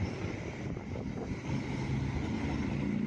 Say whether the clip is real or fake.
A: real